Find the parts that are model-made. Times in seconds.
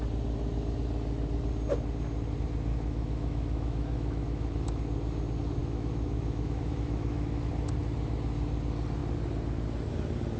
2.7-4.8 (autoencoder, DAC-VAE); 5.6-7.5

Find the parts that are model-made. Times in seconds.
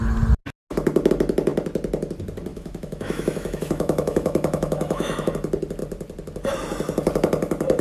2.5-5.3 (autoencoder, DAC-VAE)